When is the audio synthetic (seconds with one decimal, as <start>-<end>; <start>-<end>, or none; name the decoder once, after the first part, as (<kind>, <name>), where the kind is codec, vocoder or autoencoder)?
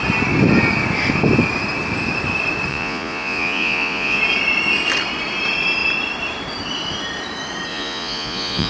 2.7-4.2 (vocoder, Vocos); 7.7-8.7